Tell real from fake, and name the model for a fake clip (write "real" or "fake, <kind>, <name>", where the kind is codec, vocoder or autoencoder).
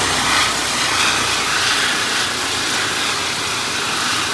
real